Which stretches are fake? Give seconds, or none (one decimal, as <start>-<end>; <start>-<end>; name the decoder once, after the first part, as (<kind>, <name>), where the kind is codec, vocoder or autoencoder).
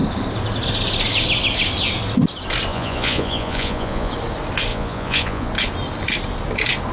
2.7-4.1 (vocoder, Vocos); 4.7-5.5